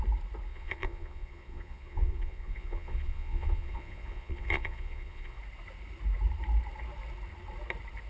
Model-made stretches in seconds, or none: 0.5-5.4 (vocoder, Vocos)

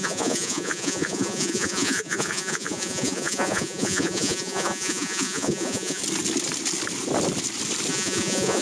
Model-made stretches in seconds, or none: 0.0-6.0 (vocoder, Vocos); 7.9-8.6

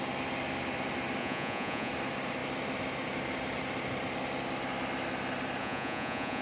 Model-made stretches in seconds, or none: 1.2-1.9 (vocoder, Vocos); 5.6-6.4

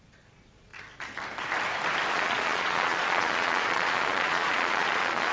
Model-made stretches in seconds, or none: 0.0-0.7 (vocoder, Vocos); 2.1-5.3

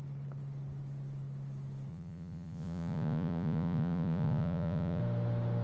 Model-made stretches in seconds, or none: 1.9-5.0 (vocoder, Vocos)

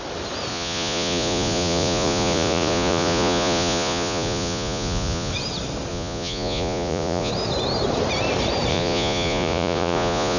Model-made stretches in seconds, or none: 0.5-5.3 (vocoder, Vocos); 5.9-7.3; 8.7-10.4

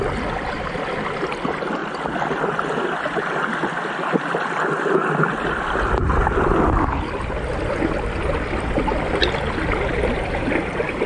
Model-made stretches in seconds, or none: none